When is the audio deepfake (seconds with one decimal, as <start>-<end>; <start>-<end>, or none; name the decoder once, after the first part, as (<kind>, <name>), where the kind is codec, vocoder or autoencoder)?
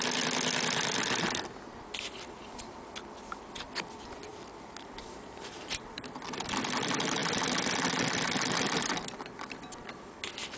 4.3-6.7 (vocoder, BigVGAN v2); 7.2-7.7